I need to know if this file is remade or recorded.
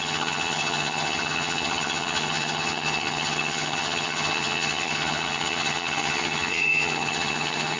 remade